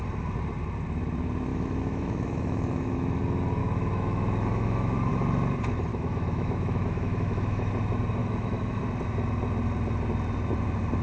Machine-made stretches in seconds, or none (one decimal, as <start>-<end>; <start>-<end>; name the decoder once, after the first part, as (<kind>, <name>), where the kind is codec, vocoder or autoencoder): 1.5-3.2 (autoencoder, DAC-VAE); 3.6-5.1; 5.9-7.7; 8.2-8.8